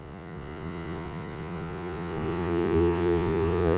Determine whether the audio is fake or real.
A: fake